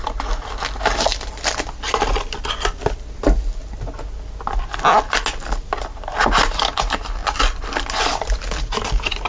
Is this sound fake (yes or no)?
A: no